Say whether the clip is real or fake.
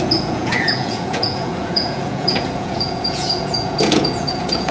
fake